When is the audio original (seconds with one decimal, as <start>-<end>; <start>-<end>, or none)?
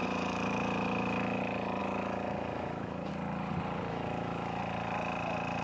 1.4-1.8; 3.1-3.9; 4.6-5.6